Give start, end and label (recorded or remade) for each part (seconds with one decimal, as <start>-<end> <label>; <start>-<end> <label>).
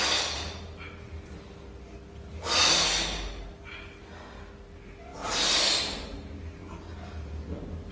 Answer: 0.0-7.9 recorded